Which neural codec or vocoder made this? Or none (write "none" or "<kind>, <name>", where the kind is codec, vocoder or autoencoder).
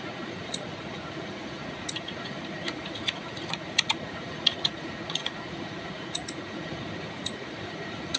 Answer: vocoder, Vocos